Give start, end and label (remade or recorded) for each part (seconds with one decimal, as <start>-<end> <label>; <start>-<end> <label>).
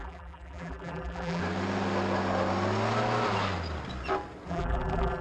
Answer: 0.0-1.4 remade; 1.4-4.5 recorded; 4.5-5.2 remade